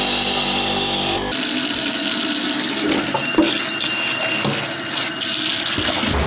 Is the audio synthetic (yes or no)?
no